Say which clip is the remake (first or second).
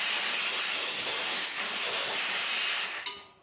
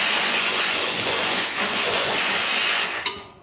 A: second